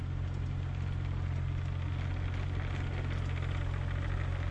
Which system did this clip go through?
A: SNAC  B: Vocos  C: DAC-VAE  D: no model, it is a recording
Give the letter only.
D